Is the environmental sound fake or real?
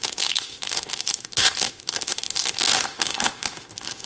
fake